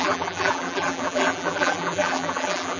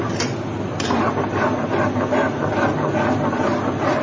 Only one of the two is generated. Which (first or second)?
first